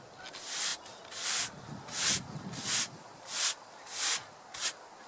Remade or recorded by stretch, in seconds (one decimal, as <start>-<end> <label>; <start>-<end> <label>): 0.0-5.1 recorded